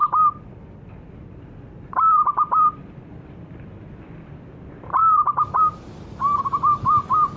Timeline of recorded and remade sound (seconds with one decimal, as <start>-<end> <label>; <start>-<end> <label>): 0.0-7.4 remade